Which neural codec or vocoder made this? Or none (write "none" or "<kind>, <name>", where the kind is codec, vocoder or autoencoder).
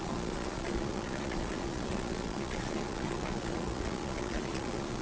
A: vocoder, Vocos